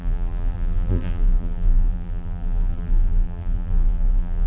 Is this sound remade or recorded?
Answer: remade